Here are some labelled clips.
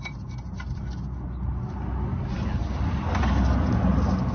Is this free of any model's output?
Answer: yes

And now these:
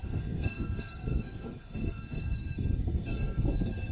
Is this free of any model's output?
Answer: no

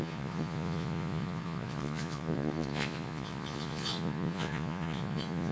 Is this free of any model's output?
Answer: no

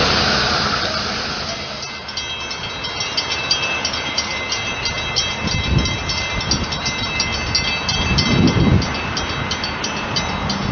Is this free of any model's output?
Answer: yes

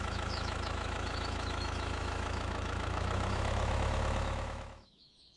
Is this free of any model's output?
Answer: no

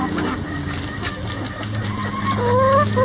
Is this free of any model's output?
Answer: yes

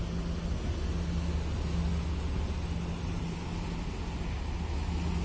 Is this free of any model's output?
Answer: yes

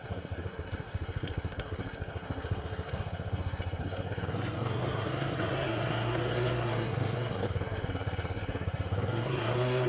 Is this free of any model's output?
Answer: no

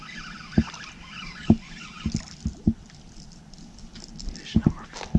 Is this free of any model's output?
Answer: yes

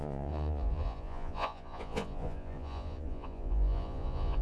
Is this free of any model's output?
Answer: no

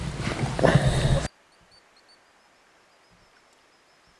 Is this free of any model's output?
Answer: yes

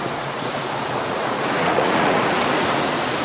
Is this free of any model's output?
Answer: no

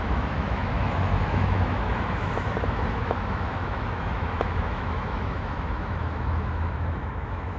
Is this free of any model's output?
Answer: no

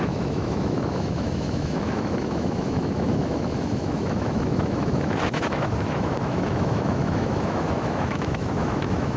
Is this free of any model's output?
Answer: no